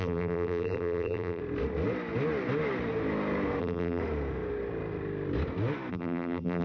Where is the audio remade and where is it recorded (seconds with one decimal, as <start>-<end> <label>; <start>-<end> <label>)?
0.0-1.4 remade; 1.4-3.6 recorded; 3.6-4.0 remade; 4.0-5.9 recorded; 5.9-6.6 remade